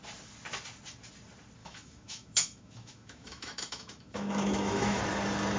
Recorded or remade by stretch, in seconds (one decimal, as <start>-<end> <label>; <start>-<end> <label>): 0.0-1.6 recorded; 1.6-5.0 remade; 5.0-5.6 recorded